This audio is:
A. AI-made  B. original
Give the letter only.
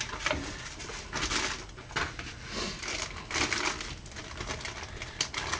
B